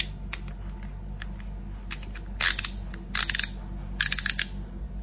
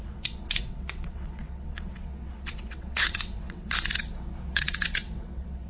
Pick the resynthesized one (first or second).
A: second